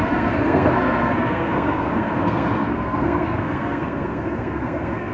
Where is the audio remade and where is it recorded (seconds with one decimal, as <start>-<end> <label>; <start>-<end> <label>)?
0.0-5.1 remade

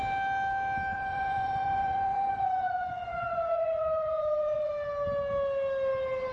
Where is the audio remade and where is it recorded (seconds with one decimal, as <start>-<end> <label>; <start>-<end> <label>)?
0.0-0.9 recorded; 0.9-4.7 remade; 4.7-6.3 recorded

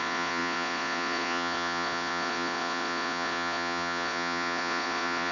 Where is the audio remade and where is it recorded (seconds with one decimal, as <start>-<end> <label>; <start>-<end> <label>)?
0.0-5.3 remade

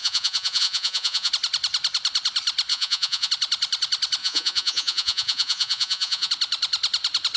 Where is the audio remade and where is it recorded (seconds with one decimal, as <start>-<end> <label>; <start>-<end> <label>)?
0.0-1.3 remade; 1.3-2.7 recorded; 2.7-3.3 remade; 3.3-4.2 recorded; 4.2-6.3 remade; 6.3-7.4 recorded

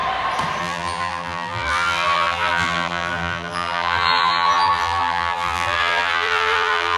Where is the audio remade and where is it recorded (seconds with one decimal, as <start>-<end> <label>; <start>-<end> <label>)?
0.0-0.6 recorded; 0.6-7.0 remade